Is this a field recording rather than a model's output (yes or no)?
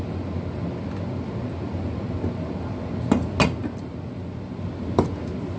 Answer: yes